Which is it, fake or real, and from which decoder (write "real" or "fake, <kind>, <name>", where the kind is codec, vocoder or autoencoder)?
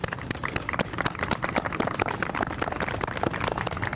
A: real